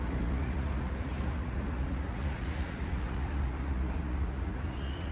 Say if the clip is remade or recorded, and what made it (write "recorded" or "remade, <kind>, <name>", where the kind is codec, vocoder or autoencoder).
remade, vocoder, Vocos